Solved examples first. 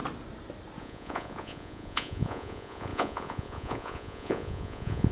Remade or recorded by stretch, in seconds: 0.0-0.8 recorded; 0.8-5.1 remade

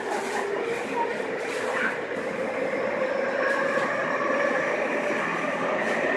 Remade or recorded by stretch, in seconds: 0.0-1.1 recorded; 1.1-2.4 remade; 2.4-4.0 recorded; 4.0-4.9 remade; 4.9-6.2 recorded